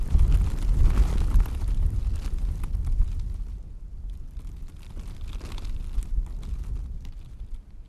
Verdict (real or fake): real